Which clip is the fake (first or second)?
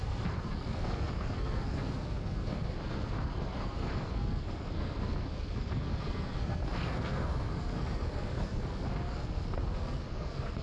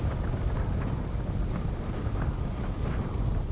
first